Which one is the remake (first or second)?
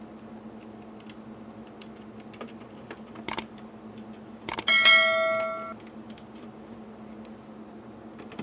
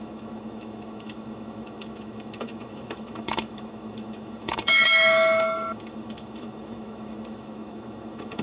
second